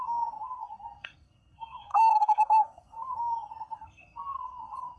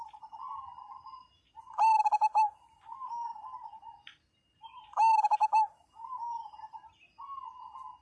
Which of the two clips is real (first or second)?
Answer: second